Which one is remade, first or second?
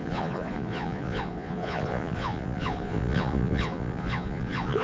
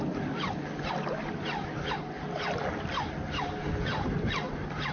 first